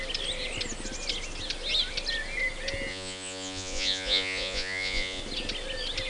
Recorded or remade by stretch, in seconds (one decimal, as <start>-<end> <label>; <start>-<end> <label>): 0.0-2.9 recorded; 2.9-5.2 remade; 5.2-6.1 recorded